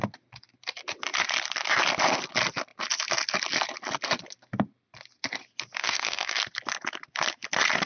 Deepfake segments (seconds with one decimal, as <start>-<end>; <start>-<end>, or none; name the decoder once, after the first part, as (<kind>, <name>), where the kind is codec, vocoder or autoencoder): 5.8-6.4 (autoencoder, DAC-VAE)